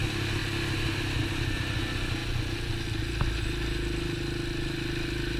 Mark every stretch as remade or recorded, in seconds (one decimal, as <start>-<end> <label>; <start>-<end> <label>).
0.0-5.4 recorded